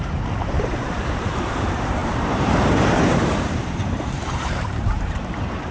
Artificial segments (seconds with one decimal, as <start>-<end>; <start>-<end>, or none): 0.0-5.7